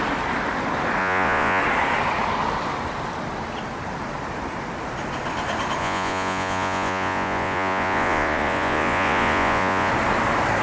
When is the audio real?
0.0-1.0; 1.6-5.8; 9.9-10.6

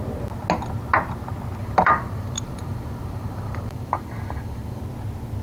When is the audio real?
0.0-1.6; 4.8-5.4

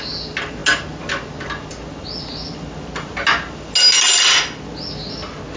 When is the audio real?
0.0-5.6